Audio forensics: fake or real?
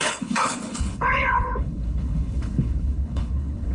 fake